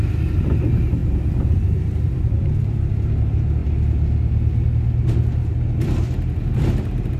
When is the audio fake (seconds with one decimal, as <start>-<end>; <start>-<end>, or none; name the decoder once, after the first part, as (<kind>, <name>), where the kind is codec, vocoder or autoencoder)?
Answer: 1.0-2.9 (vocoder, BigVGAN v2)